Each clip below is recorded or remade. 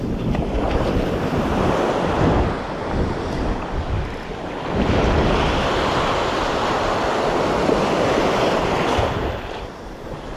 recorded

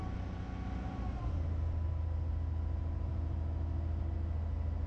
recorded